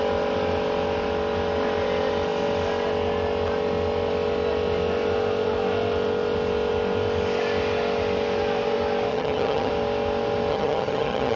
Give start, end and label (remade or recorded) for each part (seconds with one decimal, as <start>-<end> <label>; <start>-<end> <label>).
0.0-9.1 recorded; 9.1-9.7 remade; 9.7-10.5 recorded; 10.5-11.4 remade